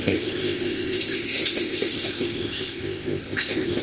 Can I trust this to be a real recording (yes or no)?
no